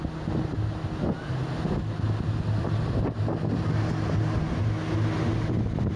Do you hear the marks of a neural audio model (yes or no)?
no